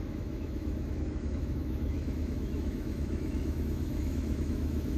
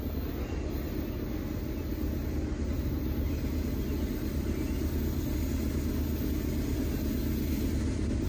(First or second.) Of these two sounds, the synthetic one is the first